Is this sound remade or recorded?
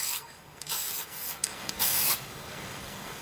remade